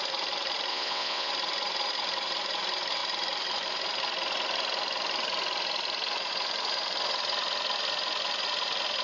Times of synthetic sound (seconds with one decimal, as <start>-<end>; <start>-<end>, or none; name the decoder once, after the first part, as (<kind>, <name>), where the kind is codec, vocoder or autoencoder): 0.7-1.3 (vocoder, WaveNeXt)